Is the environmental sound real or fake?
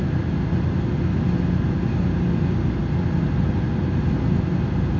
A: real